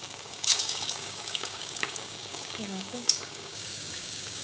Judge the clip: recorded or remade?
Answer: remade